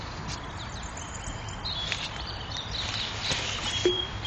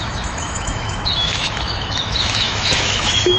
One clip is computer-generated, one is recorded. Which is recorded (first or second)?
first